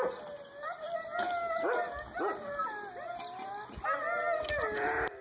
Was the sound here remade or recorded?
recorded